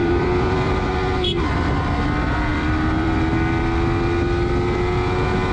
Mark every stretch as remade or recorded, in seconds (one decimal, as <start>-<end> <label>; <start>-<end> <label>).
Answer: 0.0-0.7 remade; 0.7-2.5 recorded; 2.5-3.1 remade; 3.1-5.5 recorded